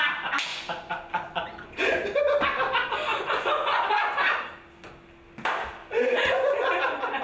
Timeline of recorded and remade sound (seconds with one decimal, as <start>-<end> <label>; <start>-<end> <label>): 0.0-0.5 recorded; 0.5-2.2 remade; 2.2-3.1 recorded; 3.1-3.8 remade; 3.8-5.8 recorded; 5.8-6.8 remade; 6.8-7.2 recorded